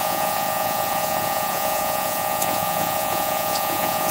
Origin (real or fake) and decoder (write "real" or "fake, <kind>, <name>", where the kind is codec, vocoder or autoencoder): fake, vocoder, Vocos